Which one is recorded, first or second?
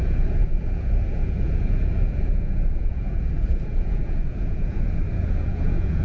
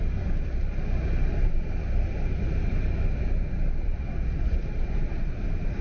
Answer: second